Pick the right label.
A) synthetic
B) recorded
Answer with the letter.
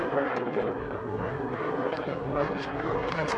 A